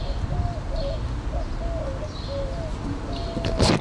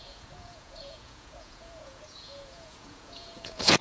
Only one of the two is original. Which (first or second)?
first